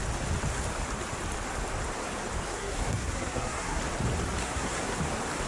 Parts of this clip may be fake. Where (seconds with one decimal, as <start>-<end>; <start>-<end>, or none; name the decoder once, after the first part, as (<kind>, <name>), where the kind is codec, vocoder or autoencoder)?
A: 2.5-3.8 (codec, SNAC); 4.4-5.0